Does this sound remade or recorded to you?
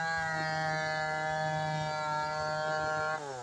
recorded